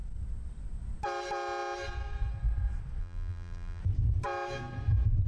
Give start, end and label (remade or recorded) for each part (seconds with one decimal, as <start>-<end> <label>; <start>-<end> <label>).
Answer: 0.0-3.0 recorded; 3.0-3.8 remade; 3.8-5.3 recorded